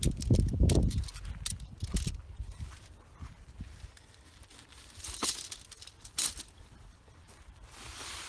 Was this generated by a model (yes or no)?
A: no